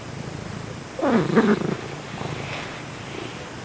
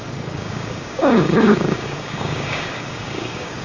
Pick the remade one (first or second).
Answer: second